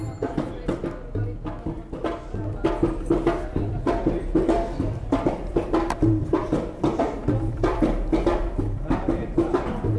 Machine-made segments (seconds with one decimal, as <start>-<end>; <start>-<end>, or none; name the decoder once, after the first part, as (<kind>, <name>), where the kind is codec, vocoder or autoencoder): 0.0-0.8 (vocoder, BigVGAN v2); 3.5-10.0